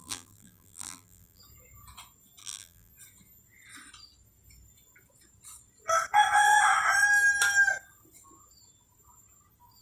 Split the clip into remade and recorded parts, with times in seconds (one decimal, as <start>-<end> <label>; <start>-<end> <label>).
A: 0.0-1.4 remade; 1.4-2.4 recorded; 2.4-2.9 remade; 2.9-9.8 recorded